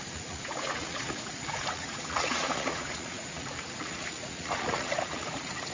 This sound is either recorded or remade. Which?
remade